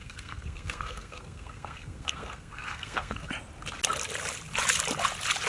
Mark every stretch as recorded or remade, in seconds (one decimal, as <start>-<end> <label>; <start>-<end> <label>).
0.0-3.3 remade; 3.3-5.5 recorded